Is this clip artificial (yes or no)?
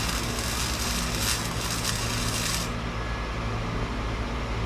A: no